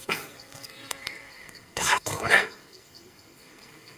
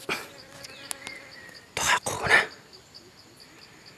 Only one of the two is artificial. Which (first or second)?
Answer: first